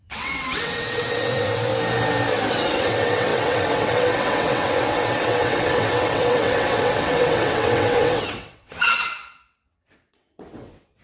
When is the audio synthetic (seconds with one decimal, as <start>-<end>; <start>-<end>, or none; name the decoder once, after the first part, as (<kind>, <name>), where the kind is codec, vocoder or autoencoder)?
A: 0.0-1.7 (vocoder, WaveNeXt); 2.5-11.0